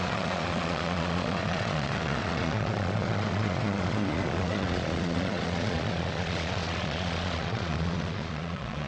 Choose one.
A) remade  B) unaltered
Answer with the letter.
A